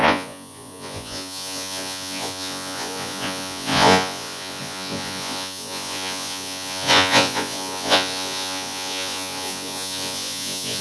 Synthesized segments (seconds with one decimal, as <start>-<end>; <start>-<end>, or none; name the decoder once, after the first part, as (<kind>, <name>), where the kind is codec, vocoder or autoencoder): 0.0-10.8 (vocoder, Vocos)